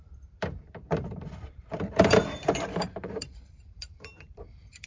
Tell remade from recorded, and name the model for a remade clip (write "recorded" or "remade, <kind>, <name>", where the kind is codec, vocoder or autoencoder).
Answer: remade, vocoder, BigVGAN v2